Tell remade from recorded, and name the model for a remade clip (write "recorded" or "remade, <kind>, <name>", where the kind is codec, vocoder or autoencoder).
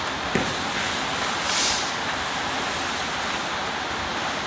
recorded